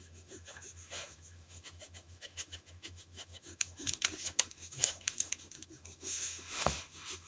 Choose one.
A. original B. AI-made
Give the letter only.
B